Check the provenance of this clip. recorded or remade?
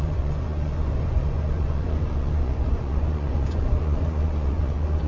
remade